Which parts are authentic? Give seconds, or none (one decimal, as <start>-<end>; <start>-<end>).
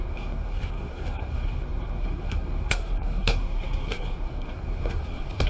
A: none